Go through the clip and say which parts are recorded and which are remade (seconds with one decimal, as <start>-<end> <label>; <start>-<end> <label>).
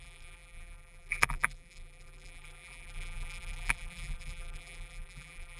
0.0-5.6 remade